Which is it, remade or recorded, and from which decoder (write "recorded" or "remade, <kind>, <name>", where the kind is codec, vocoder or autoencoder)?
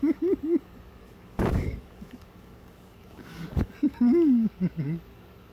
remade, codec, DAC